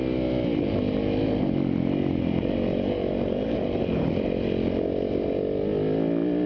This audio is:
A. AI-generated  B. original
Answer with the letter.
B